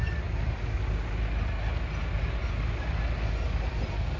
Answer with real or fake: real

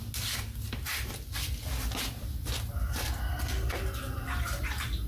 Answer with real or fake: real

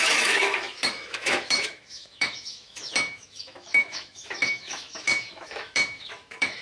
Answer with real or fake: fake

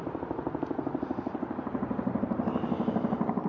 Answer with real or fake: real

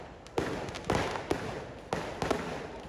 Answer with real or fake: real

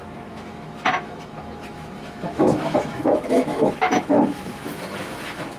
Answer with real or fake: fake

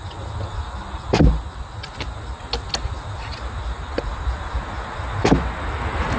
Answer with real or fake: real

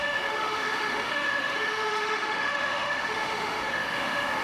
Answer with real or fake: fake